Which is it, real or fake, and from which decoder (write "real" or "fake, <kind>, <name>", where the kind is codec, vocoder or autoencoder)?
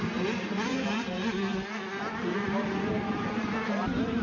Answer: fake, vocoder, BigVGAN v2